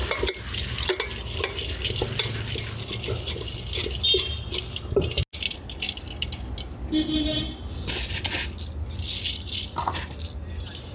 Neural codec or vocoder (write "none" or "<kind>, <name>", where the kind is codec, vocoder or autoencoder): none